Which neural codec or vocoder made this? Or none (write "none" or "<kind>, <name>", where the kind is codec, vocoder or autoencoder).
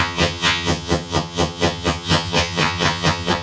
vocoder, HiFi-GAN